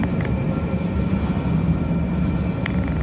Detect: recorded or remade recorded